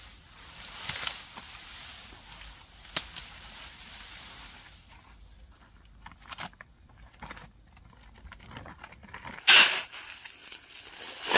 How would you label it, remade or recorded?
recorded